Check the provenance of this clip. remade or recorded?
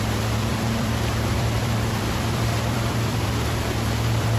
remade